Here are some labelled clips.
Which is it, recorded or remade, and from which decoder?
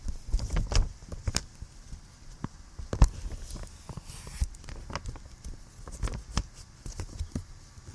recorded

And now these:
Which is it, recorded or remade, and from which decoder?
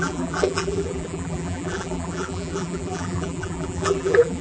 remade, vocoder, BigVGAN v2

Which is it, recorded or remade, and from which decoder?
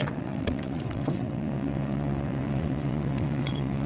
remade, vocoder, WaveNeXt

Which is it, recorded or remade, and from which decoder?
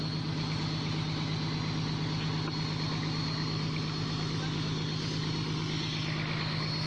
recorded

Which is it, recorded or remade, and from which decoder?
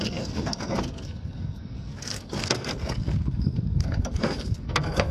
remade, codec, SNAC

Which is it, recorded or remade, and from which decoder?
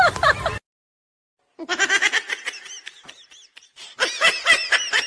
recorded